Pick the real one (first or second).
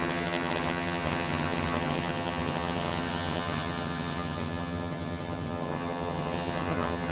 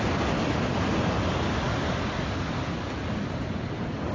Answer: second